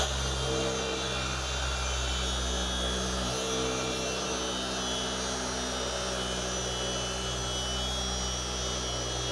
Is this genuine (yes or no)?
yes